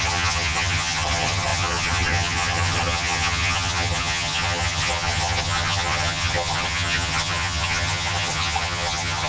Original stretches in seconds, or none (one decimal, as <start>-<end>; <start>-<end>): none

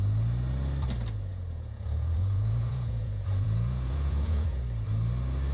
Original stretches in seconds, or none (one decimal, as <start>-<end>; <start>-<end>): 0.0-1.3; 4.6-5.5

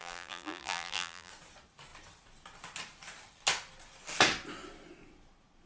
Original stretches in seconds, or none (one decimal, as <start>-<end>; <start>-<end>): 1.3-5.7